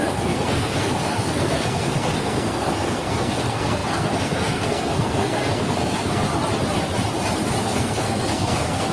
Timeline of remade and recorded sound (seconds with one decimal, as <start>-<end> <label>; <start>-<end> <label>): 0.0-6.3 remade; 6.3-7.6 recorded; 7.6-8.9 remade

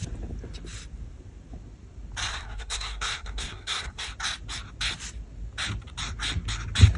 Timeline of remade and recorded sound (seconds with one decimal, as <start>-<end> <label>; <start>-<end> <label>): 0.0-2.3 recorded; 2.3-4.1 remade; 4.1-7.0 recorded

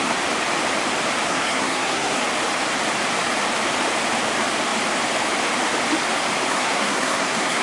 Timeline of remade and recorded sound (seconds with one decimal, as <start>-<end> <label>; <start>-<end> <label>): 0.0-1.3 recorded; 1.3-2.2 remade; 2.2-6.5 recorded; 6.5-7.6 remade

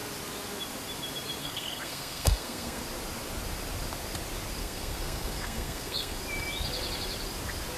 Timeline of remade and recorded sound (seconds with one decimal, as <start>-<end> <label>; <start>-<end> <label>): 0.0-1.4 recorded; 1.4-2.8 remade; 2.8-4.6 recorded; 4.6-6.2 remade; 6.2-7.8 recorded

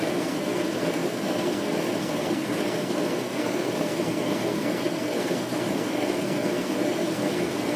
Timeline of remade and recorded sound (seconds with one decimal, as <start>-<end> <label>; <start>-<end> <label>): 0.0-7.8 remade

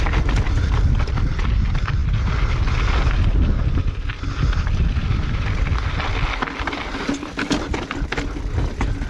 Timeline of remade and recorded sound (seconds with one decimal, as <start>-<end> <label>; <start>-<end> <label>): 0.0-9.1 recorded

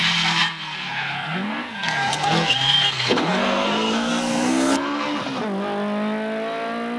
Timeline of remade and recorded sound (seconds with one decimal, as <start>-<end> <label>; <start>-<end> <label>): 0.0-5.2 remade; 5.2-7.0 recorded